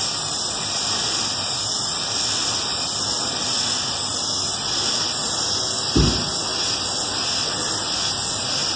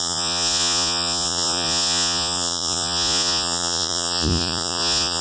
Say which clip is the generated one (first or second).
second